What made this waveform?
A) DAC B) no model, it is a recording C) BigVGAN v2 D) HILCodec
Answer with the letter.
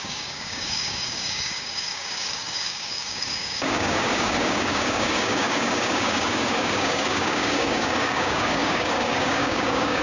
A